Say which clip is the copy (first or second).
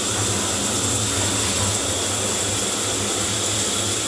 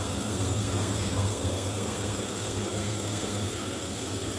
second